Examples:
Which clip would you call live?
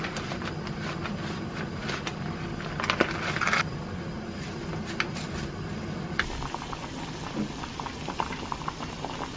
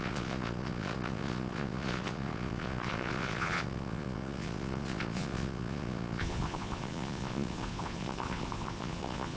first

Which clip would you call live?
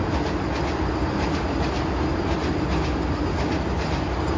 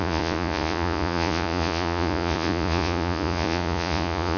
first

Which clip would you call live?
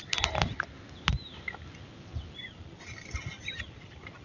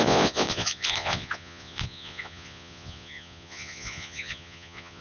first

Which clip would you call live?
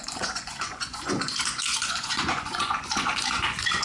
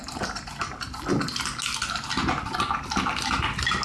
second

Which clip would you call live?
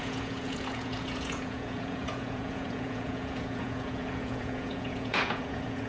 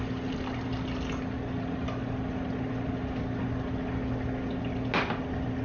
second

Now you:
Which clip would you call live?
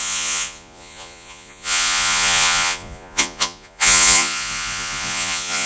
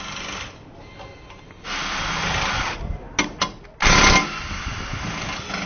second